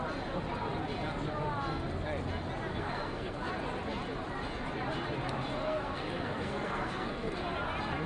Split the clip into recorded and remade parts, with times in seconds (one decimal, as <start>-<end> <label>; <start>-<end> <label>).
0.0-2.7 recorded; 2.7-3.5 remade; 3.5-5.6 recorded; 5.6-7.4 remade; 7.4-8.1 recorded